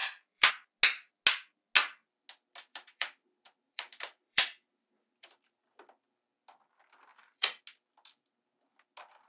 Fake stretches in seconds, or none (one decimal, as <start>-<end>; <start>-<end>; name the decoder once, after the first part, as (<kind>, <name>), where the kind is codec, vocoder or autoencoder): 0.0-0.5 (vocoder, BigVGAN v2); 2.7-5.6; 7.1-7.6